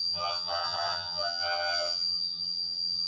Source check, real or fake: fake